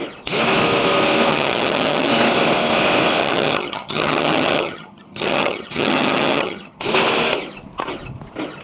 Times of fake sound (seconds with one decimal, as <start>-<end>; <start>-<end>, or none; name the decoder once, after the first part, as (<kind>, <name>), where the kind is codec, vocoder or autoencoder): 1.3-2.1 (vocoder, HiFi-GAN); 3.2-6.8